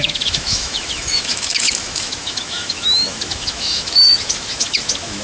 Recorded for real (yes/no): no